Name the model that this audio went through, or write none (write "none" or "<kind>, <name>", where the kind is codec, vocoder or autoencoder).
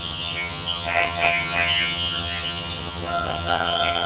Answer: vocoder, HiFi-GAN